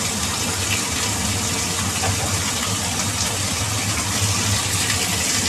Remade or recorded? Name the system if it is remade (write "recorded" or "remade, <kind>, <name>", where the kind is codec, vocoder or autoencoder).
recorded